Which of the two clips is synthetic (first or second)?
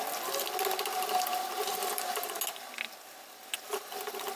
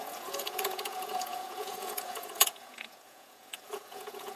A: second